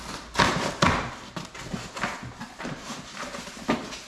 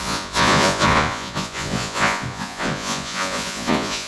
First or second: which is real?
first